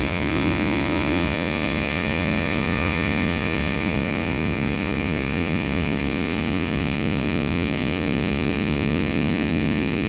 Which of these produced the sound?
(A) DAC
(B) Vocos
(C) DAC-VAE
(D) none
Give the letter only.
B